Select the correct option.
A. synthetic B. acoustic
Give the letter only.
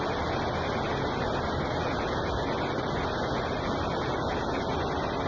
B